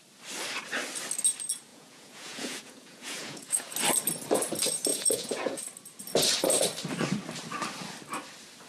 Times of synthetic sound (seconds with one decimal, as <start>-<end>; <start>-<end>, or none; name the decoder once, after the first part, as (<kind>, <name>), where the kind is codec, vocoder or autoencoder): 1.7-3.7 (vocoder, Vocos); 4.9-5.6